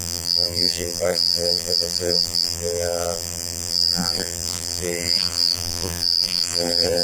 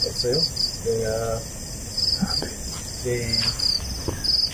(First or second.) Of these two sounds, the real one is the second